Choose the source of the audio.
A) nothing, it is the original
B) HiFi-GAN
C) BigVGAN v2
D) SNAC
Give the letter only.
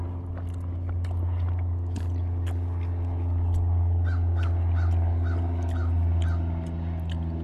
A